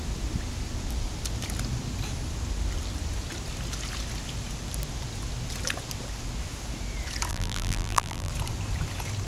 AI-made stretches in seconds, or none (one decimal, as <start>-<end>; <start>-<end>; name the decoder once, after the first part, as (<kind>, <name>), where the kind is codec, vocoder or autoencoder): 7.3-8.3 (vocoder, BigVGAN v2)